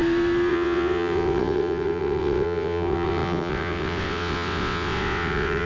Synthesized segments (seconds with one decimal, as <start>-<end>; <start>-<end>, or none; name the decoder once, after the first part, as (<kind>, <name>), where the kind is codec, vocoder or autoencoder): 0.5-5.7 (vocoder, WaveNeXt)